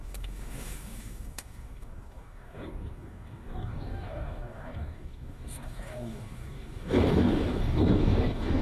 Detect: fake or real fake